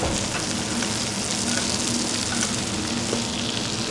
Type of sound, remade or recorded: recorded